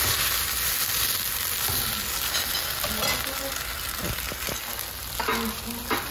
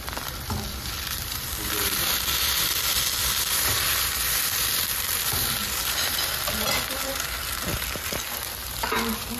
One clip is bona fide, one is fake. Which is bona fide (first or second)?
first